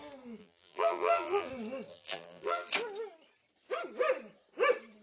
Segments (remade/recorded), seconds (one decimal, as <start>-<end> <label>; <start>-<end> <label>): 0.0-0.4 recorded; 0.4-1.5 remade; 1.5-1.9 recorded; 1.9-2.7 remade; 2.7-5.0 recorded